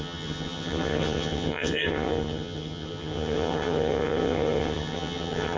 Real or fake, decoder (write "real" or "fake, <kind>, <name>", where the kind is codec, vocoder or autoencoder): fake, vocoder, HiFi-GAN